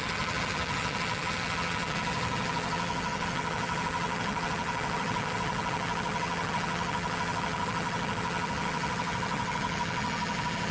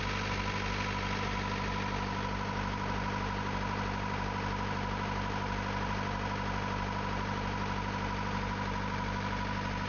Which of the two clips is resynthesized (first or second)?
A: first